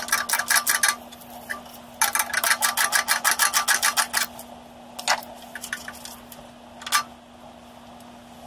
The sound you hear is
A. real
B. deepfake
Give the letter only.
A